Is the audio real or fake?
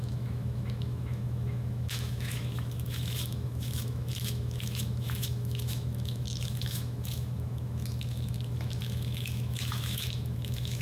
fake